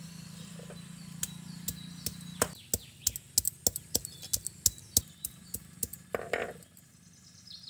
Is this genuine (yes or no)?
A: yes